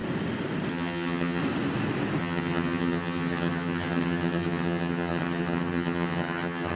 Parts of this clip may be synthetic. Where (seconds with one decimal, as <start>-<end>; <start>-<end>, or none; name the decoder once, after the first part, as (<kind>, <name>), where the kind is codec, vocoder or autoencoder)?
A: 0.7-1.4 (vocoder, HiFi-GAN); 2.2-6.8